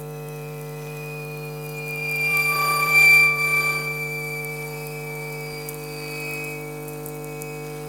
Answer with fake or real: fake